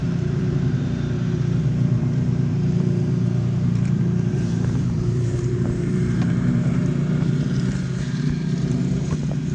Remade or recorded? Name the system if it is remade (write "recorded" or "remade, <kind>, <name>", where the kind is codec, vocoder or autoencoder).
remade, vocoder, BigVGAN v2